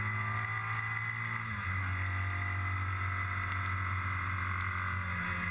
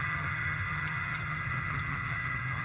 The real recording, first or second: first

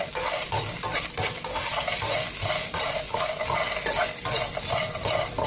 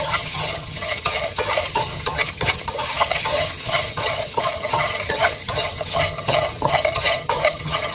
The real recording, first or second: first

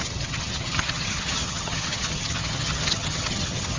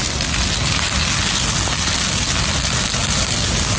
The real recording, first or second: second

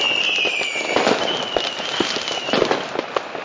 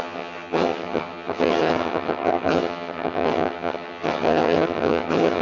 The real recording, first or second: first